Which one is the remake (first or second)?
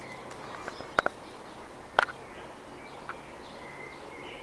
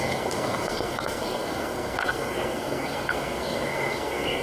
second